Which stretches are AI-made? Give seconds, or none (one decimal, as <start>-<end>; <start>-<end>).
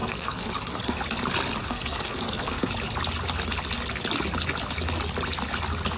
0.0-1.0; 1.6-2.7